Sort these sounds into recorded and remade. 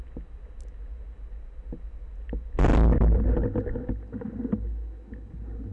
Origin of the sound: recorded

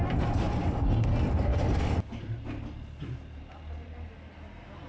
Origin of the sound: recorded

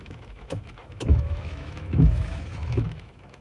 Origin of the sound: remade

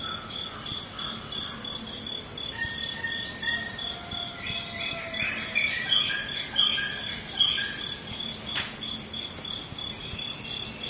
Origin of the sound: recorded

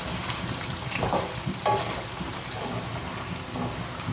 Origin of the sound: recorded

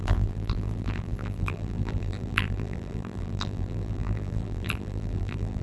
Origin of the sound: remade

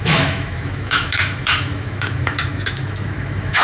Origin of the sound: remade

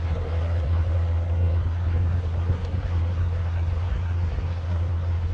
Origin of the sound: remade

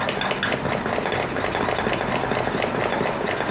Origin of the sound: recorded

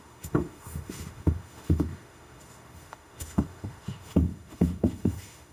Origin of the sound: remade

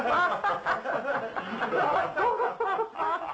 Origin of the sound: recorded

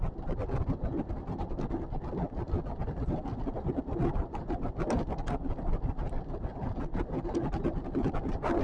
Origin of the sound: recorded